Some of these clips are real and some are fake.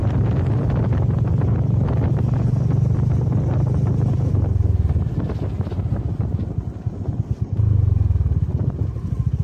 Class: real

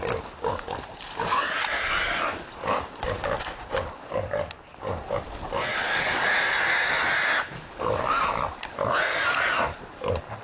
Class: real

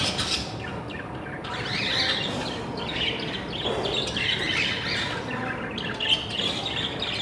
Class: real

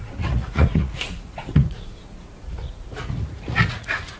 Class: fake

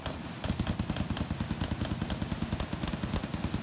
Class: real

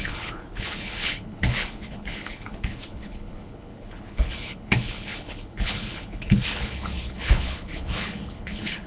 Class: fake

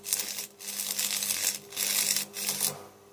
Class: real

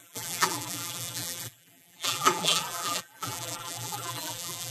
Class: fake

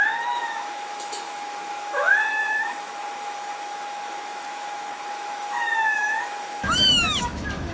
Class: fake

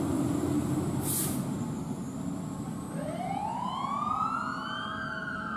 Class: real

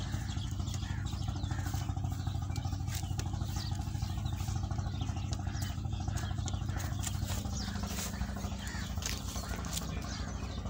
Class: real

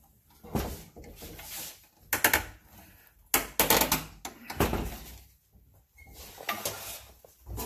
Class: real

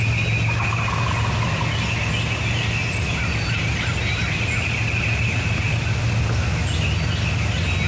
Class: real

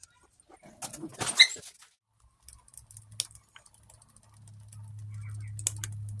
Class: real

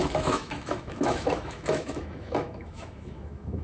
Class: fake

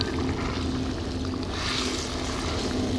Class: real